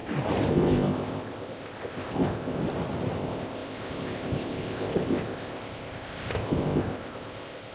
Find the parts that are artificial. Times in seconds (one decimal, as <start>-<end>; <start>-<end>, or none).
0.5-2.6; 3.2-7.7